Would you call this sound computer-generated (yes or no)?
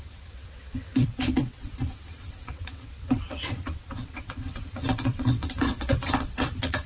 yes